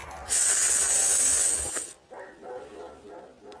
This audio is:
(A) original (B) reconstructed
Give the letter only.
A